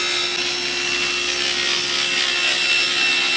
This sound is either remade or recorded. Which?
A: recorded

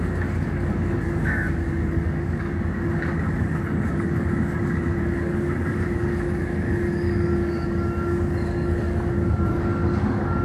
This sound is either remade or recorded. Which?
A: remade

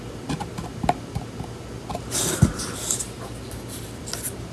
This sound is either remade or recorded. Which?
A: recorded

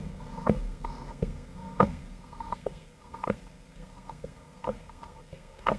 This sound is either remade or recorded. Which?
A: remade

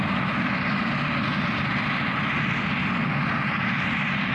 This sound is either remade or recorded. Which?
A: recorded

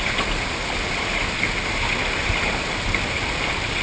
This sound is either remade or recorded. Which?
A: recorded